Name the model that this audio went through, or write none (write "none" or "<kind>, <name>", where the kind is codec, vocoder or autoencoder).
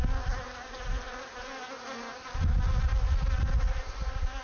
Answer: none